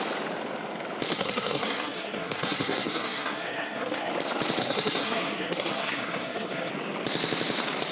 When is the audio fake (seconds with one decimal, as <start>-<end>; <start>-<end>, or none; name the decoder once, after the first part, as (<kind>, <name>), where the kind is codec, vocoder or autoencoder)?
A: 1.1-4.1 (codec, SNAC); 4.6-6.7